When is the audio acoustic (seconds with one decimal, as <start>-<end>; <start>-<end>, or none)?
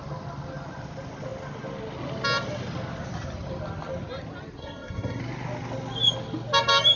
0.0-4.6; 5.2-7.0